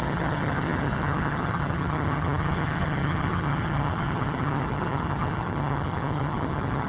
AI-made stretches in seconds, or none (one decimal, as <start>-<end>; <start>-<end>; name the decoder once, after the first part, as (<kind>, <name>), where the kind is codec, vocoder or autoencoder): 0.0-6.9 (vocoder, HiFi-GAN)